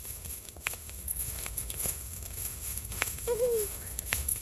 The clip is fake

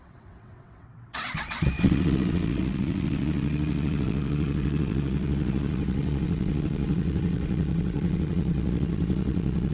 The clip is fake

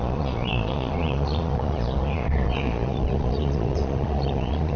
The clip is fake